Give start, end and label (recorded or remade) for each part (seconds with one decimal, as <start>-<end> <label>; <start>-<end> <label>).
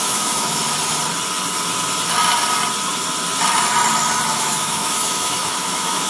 0.0-0.6 remade; 0.6-4.3 recorded; 4.3-6.1 remade